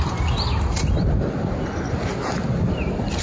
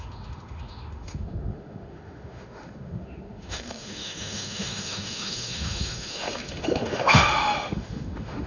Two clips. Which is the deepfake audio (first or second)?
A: second